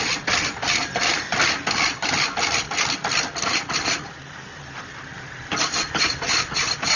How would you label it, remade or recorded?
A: recorded